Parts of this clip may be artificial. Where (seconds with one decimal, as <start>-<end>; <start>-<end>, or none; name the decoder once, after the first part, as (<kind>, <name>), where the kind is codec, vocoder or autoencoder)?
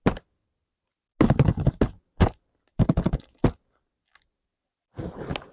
none